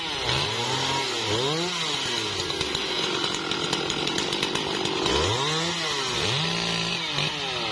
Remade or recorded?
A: recorded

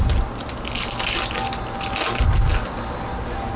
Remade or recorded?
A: recorded